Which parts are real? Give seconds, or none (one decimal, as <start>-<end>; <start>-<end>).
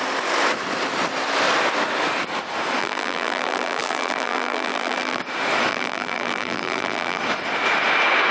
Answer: 0.0-2.8; 5.2-5.7; 7.2-8.3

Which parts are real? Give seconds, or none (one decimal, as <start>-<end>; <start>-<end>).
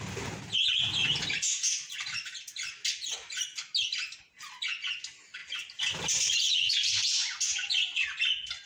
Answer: 0.0-8.7